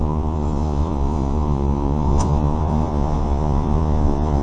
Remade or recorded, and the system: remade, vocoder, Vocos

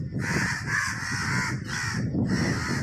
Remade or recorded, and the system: recorded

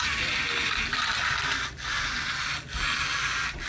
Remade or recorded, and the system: recorded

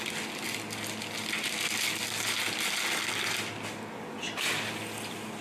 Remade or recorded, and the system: recorded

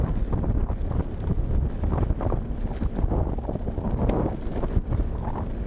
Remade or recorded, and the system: recorded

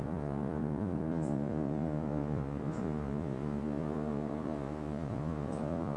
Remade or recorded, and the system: remade, vocoder, Vocos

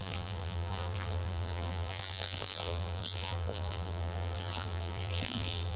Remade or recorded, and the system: remade, vocoder, BigVGAN v2